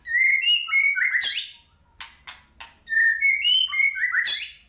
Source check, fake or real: real